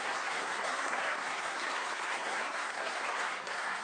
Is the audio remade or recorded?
remade